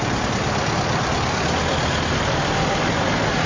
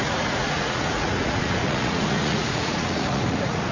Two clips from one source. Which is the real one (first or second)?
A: first